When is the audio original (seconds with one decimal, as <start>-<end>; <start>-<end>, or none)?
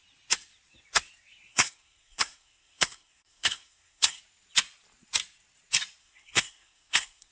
0.0-1.5; 4.2-6.0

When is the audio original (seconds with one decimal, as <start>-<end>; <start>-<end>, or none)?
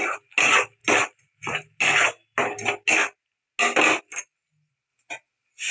0.0-5.7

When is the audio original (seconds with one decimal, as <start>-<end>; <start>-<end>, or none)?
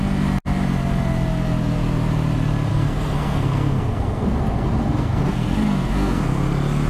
0.0-2.7; 6.4-6.9